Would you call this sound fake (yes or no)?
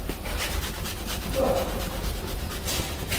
no